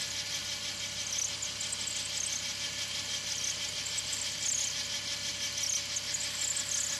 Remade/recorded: recorded